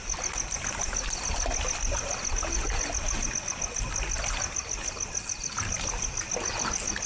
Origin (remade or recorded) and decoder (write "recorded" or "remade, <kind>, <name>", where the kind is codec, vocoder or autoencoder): recorded